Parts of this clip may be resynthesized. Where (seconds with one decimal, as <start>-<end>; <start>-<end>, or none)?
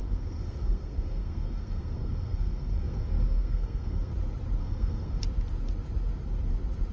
0.0-4.1; 4.6-5.2